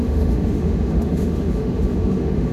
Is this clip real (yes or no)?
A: no